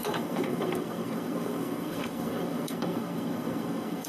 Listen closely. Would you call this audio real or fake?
fake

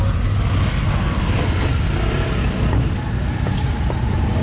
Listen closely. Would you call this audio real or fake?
real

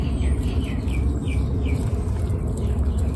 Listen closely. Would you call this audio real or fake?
real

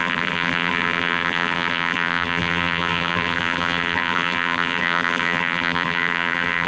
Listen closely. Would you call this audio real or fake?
fake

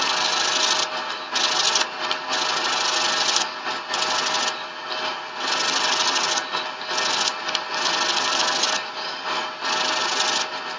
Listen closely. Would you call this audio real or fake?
real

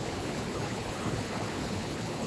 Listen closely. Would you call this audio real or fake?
fake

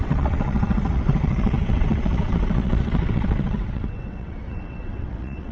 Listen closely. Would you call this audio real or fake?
fake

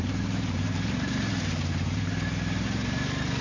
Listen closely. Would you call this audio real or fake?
fake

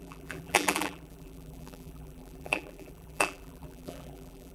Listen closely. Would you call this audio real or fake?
fake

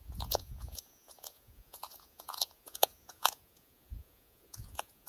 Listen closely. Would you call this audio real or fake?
fake